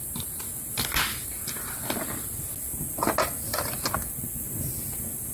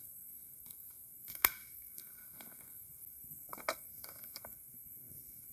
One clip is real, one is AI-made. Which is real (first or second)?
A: first